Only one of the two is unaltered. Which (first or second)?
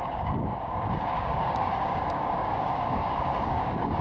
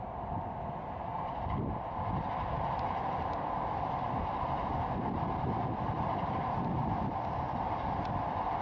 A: second